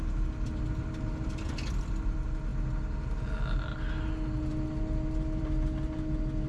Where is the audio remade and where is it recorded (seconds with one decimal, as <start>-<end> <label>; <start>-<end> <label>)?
0.0-6.5 recorded